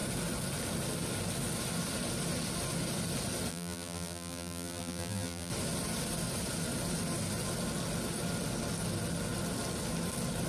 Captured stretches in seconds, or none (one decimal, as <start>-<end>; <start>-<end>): 0.0-3.5; 5.5-10.5